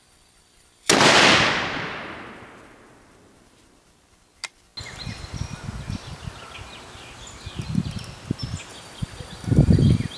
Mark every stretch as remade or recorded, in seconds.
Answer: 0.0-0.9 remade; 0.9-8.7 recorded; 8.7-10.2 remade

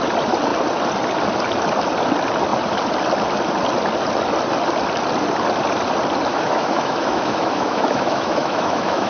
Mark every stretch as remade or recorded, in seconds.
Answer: 0.0-6.3 recorded; 6.3-9.1 remade

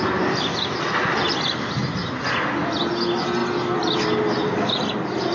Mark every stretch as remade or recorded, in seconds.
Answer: 0.0-5.3 recorded